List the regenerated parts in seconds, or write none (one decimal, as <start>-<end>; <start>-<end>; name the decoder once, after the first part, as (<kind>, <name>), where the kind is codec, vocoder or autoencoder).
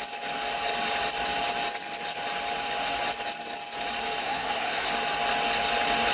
4.2-4.9 (codec, SNAC)